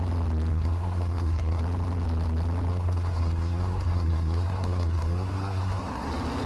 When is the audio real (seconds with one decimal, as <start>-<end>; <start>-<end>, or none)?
0.0-0.5; 1.6-2.7; 6.1-6.5